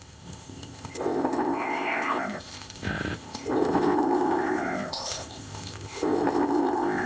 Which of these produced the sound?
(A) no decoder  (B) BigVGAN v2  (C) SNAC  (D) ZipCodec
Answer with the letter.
D